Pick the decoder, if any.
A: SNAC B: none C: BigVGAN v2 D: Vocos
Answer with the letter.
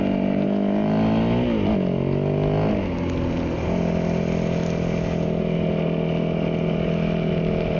B